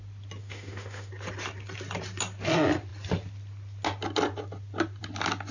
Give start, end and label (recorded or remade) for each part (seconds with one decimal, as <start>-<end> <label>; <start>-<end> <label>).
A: 0.0-0.4 recorded; 0.4-1.1 remade; 1.1-5.5 recorded